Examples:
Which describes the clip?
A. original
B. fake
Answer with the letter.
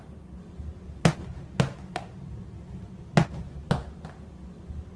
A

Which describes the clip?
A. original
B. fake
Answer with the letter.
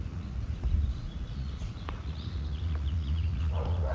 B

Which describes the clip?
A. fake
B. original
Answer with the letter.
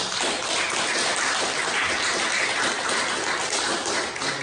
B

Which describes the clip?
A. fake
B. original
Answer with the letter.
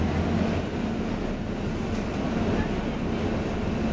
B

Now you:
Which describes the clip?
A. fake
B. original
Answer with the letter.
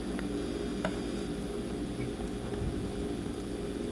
B